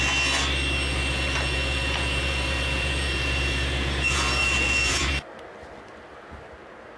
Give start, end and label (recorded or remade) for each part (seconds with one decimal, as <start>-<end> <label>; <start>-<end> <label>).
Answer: 0.0-0.9 recorded; 0.9-5.1 remade; 5.1-7.0 recorded